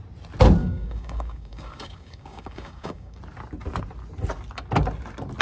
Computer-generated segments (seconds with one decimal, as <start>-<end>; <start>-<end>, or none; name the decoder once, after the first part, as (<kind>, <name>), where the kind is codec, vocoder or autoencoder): 0.6-3.2 (codec, DAC)